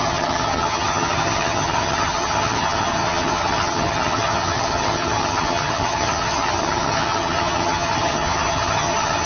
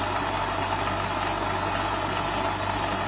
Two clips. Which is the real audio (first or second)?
second